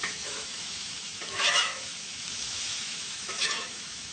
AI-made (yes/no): yes